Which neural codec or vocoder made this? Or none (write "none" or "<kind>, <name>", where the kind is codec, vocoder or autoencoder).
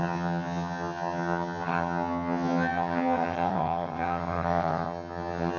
vocoder, HiFi-GAN